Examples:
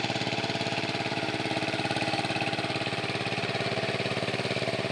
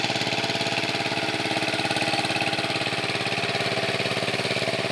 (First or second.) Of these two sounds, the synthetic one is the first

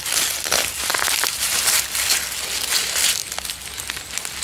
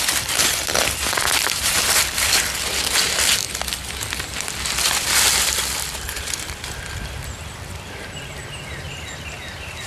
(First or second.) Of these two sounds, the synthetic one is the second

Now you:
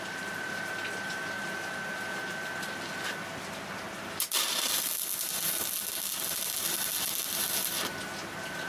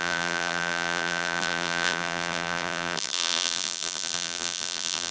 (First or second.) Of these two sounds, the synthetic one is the second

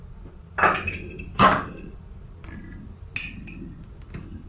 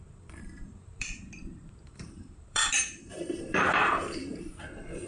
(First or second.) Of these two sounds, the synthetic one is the second